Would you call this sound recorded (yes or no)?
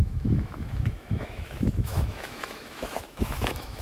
no